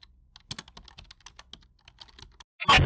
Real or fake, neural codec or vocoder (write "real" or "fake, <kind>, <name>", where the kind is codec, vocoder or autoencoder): real